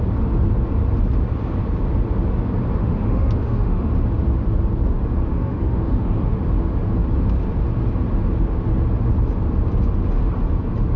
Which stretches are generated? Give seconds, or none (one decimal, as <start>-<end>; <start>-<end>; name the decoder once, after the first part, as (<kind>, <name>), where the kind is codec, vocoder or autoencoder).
2.8-3.9 (autoencoder, DAC-VAE); 5.3-6.4